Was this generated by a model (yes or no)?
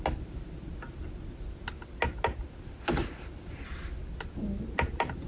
no